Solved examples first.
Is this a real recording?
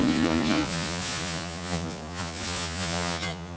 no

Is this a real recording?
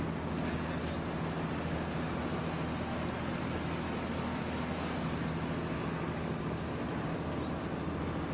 yes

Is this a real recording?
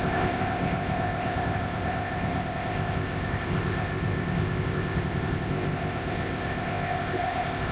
no